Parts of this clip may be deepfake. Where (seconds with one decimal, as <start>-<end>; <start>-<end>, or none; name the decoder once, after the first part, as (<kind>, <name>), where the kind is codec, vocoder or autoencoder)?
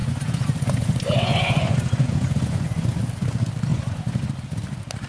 0.0-3.1 (vocoder, Vocos); 3.7-4.3